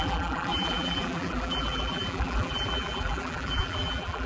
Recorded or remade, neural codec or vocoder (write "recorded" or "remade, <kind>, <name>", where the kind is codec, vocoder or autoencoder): remade, vocoder, BigVGAN v2